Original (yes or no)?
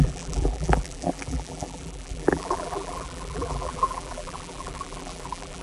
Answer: no